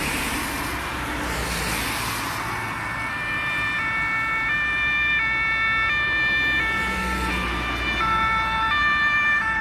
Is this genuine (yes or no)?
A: yes